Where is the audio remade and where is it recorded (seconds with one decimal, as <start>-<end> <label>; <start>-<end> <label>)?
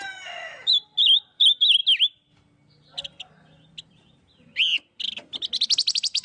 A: 0.0-1.8 remade; 1.8-5.5 recorded; 5.5-6.2 remade